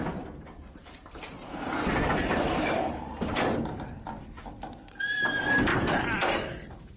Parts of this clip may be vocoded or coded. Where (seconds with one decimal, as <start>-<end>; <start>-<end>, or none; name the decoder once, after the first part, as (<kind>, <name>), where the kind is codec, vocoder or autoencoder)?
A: 0.0-4.2 (vocoder, BigVGAN v2); 5.7-7.0